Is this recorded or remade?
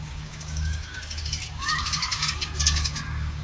remade